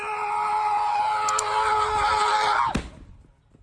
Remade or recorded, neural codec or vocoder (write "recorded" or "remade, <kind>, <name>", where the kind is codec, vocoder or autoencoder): recorded